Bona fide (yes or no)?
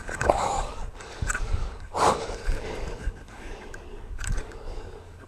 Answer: no